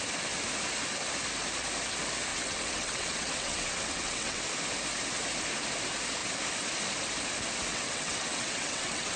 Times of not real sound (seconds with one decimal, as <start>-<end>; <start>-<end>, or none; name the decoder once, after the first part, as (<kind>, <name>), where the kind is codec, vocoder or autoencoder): 2.3-4.4 (vocoder, WaveNeXt); 7.7-9.2